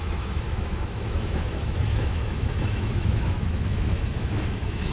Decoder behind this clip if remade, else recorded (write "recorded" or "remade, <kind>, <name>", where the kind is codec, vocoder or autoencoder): remade, autoencoder, DAC-VAE